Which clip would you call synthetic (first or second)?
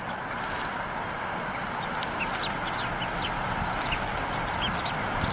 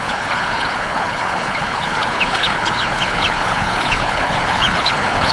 second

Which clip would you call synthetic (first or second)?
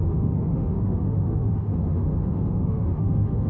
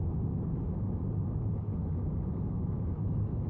first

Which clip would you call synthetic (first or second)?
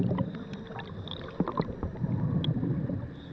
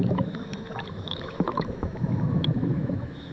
second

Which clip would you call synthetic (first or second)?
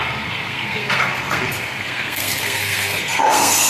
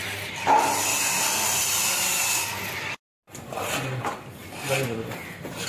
first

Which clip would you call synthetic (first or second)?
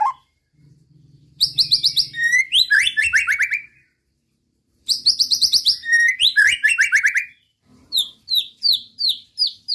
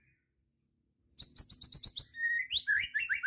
first